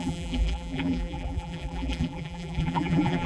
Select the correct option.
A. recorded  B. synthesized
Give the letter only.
B